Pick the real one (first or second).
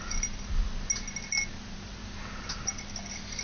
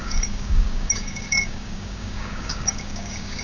first